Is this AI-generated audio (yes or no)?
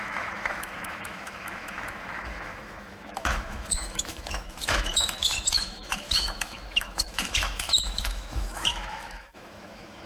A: yes